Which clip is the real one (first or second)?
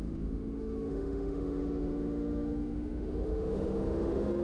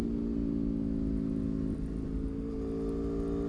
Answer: second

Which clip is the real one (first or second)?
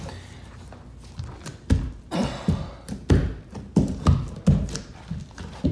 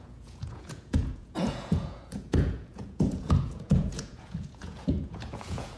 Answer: first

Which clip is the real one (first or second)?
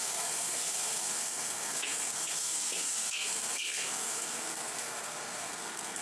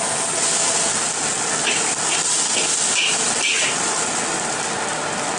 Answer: second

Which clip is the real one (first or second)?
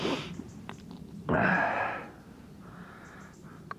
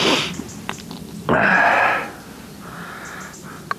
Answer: second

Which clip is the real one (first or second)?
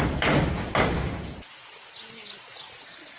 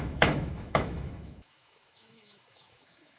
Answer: first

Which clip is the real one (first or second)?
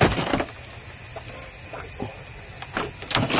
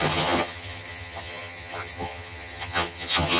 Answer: first